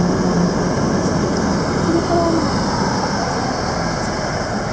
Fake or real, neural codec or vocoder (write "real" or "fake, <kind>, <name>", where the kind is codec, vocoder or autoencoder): real